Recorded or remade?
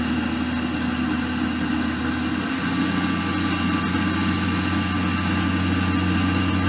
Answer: recorded